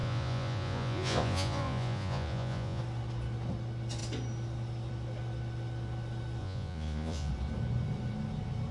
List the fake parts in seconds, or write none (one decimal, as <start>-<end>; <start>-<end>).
0.0-2.8; 6.4-7.3